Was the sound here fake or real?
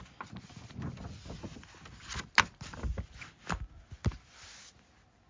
real